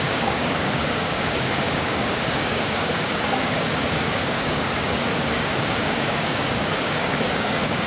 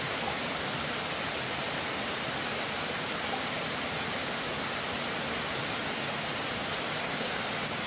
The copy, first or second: first